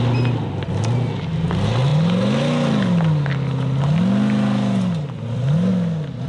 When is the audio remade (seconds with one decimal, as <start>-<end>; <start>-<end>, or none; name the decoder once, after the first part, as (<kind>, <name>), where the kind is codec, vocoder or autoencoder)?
none